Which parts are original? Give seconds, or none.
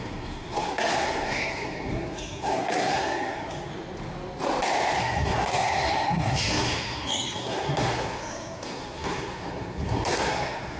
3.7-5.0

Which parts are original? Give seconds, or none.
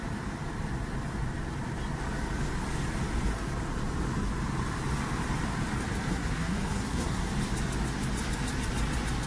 0.0-6.1; 7.3-9.3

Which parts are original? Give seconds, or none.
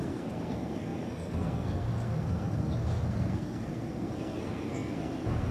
none